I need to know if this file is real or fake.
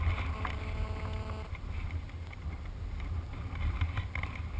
real